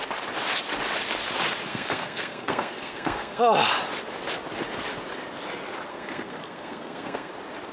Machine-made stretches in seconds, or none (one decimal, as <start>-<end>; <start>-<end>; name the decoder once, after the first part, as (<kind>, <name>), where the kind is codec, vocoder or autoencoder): 1.7-3.4 (codec, SNAC); 5.9-7.3